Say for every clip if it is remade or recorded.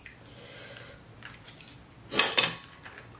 recorded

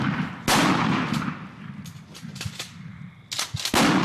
recorded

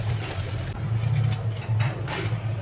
recorded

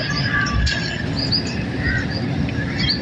recorded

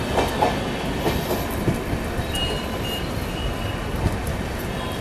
recorded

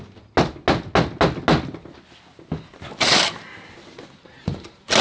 recorded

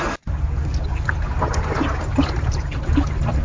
recorded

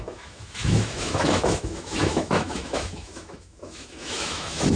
remade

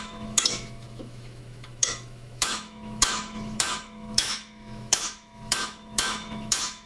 remade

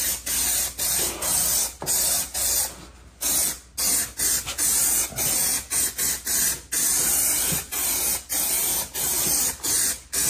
recorded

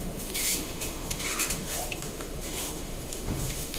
remade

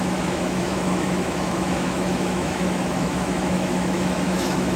remade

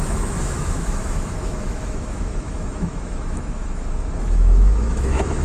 remade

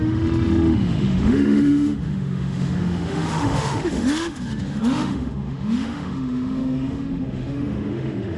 remade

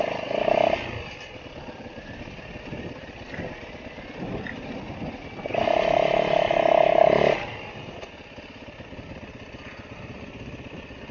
recorded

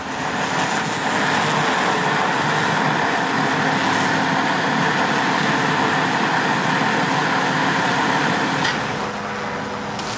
recorded